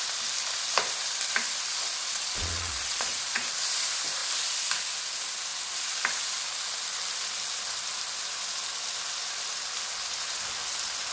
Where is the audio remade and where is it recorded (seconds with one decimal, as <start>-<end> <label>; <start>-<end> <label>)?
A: 0.0-2.0 recorded; 2.0-3.5 remade; 3.5-11.1 recorded